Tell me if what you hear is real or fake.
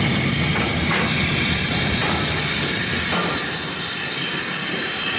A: real